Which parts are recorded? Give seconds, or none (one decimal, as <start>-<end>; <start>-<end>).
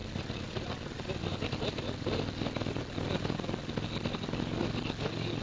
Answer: 2.2-5.4